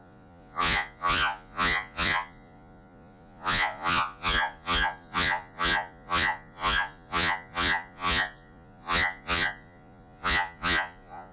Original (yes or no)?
no